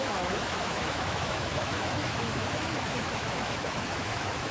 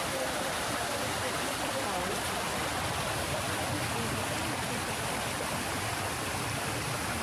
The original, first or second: second